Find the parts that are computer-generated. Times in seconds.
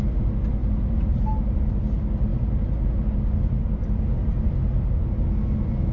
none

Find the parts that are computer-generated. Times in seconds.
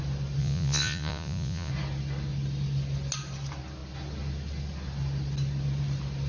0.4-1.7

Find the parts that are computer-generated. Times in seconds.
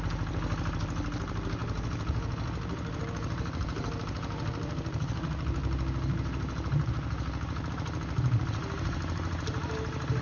none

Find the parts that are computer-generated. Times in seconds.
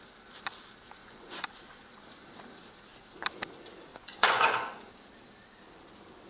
1.0-1.5; 3.9-4.9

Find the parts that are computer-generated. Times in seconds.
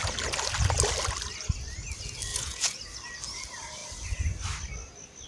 2.3-2.8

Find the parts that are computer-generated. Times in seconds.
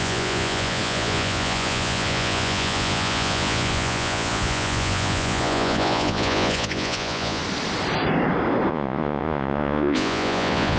0.0-7.4; 8.7-10.8